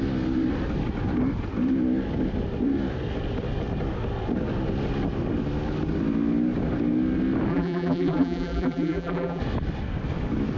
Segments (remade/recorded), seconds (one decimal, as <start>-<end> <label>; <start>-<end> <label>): 0.0-7.5 recorded; 7.5-9.4 remade; 9.4-10.6 recorded